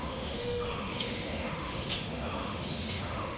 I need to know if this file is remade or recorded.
remade